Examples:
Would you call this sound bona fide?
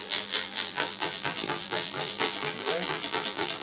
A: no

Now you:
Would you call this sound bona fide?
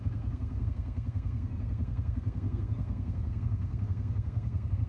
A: no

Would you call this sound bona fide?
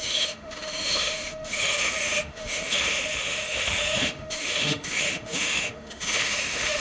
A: no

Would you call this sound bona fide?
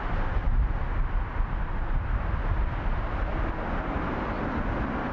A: yes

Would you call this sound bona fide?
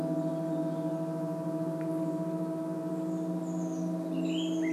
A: yes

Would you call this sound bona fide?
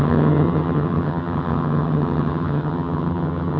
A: no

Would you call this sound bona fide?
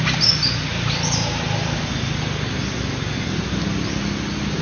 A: yes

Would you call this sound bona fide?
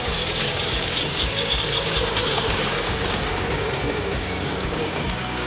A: no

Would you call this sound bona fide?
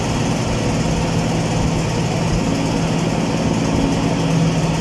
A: yes